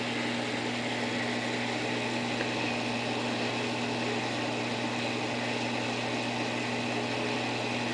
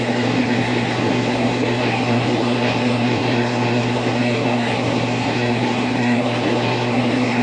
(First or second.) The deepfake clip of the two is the second